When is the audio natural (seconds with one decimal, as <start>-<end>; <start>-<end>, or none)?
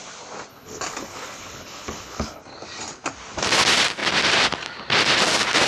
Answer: 0.0-0.5; 2.4-5.7